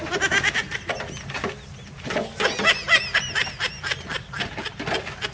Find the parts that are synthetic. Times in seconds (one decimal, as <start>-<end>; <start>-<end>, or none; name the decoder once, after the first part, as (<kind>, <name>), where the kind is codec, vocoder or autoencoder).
none